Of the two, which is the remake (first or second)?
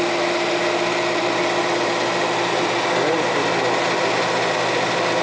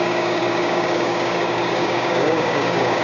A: second